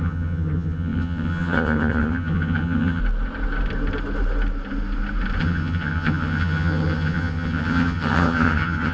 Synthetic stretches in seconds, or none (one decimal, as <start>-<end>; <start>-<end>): 0.0-3.0; 5.4-8.9